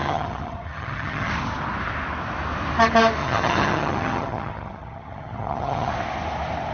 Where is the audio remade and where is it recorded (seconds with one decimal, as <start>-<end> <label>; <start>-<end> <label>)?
0.0-1.3 remade; 1.3-3.2 recorded; 3.2-5.9 remade; 5.9-6.7 recorded

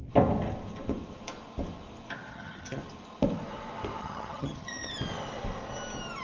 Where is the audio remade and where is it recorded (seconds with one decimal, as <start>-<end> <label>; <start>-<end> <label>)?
0.0-2.3 recorded; 2.3-2.8 remade; 2.8-4.0 recorded; 4.0-4.9 remade; 4.9-6.2 recorded

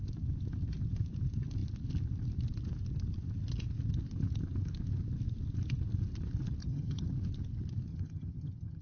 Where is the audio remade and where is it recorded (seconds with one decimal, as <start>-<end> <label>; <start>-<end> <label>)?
0.0-6.6 recorded; 6.6-7.1 remade; 7.1-7.9 recorded; 7.9-8.8 remade

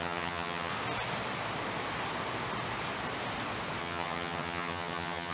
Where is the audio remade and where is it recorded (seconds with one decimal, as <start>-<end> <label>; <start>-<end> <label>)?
0.0-0.7 remade; 0.7-3.8 recorded; 3.8-5.3 remade